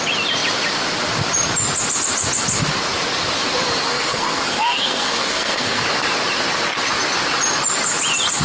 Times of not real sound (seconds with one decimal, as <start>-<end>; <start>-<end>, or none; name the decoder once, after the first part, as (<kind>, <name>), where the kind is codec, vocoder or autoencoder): 3.9-5.8 (codec, SNAC)